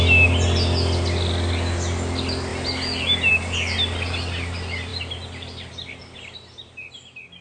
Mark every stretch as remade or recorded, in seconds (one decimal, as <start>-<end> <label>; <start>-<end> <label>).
0.0-7.4 recorded